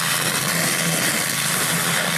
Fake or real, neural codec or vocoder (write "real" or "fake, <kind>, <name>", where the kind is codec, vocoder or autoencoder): real